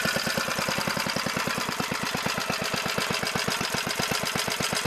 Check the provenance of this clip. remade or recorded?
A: recorded